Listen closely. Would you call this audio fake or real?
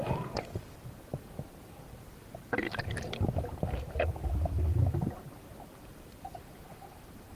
fake